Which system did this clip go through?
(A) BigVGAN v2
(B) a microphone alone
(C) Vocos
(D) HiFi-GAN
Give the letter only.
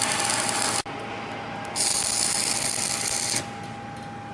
B